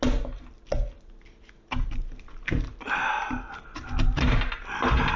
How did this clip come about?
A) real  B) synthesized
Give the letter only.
A